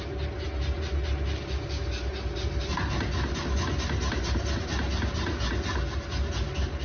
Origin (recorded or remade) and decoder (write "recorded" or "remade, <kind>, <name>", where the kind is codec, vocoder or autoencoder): recorded